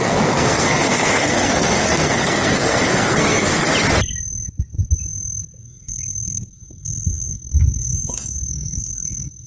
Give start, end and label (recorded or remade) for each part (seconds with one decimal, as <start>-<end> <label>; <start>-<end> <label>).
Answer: 0.0-3.7 remade; 3.7-5.6 recorded; 5.6-9.5 remade